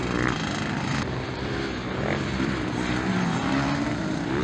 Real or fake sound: real